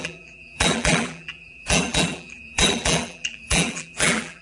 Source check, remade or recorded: remade